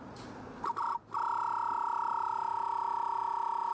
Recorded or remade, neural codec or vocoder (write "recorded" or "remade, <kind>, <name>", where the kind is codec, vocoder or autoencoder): recorded